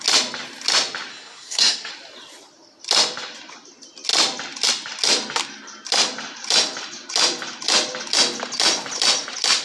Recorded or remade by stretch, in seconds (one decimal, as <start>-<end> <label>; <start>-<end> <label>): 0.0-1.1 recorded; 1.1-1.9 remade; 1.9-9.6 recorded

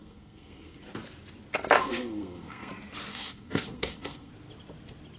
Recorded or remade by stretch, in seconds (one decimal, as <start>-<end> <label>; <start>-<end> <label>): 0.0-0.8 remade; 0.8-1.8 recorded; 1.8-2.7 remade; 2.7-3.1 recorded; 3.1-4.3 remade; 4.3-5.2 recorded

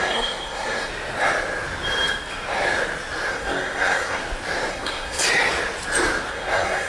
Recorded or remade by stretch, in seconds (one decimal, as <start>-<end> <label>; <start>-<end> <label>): 0.0-0.9 remade; 0.9-3.3 recorded; 3.3-4.2 remade; 4.2-4.7 recorded; 4.7-5.2 remade; 5.2-6.3 recorded; 6.3-6.9 remade

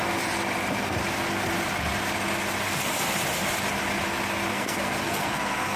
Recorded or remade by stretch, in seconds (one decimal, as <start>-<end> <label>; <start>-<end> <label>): 0.0-4.5 recorded; 4.5-5.8 remade